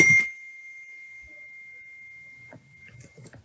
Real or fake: real